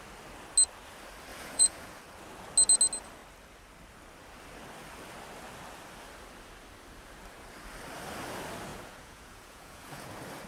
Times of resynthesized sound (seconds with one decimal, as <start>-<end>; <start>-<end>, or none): 1.3-2.0; 8.7-10.1